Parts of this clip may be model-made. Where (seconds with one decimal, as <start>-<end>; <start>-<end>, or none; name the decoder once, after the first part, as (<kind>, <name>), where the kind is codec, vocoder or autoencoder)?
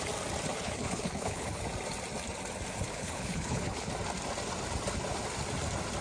0.5-1.6 (codec, HILCodec); 2.9-3.9